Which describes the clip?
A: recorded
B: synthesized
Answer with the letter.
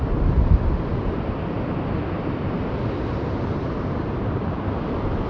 A